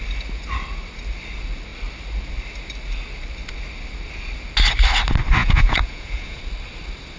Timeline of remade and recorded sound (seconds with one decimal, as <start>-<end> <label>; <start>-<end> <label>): 0.0-5.4 recorded; 5.4-6.4 remade; 6.4-7.2 recorded